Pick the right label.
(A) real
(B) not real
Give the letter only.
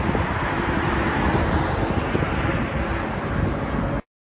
A